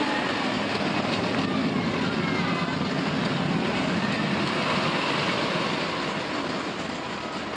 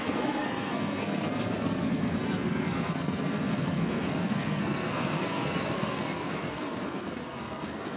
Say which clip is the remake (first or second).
second